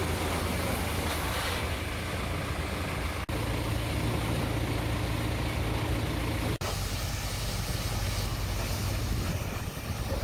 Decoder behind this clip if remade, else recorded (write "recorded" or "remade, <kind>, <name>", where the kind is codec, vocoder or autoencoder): recorded